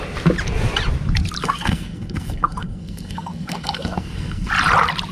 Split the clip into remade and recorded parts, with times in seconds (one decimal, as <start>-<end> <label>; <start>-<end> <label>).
0.0-1.4 recorded; 1.4-4.5 remade; 4.5-5.1 recorded